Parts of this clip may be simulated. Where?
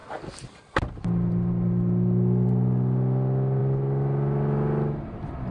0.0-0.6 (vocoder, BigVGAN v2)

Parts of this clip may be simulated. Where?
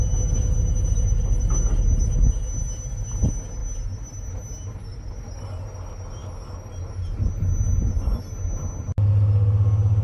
none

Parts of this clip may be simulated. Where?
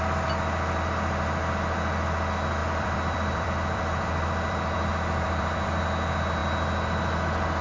2.6-5.8 (vocoder, BigVGAN v2)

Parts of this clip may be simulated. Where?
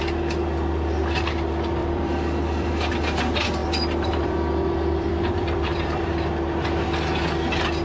1.8-2.7 (vocoder, BigVGAN v2); 3.6-6.3